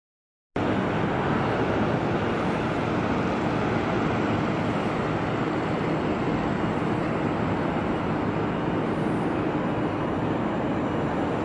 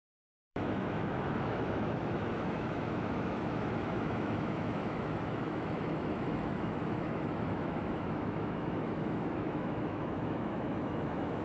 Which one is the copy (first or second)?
second